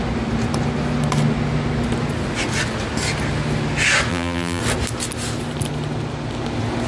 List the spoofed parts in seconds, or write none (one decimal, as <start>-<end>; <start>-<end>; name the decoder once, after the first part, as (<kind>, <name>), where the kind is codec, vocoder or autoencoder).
4.1-4.6 (vocoder, BigVGAN v2)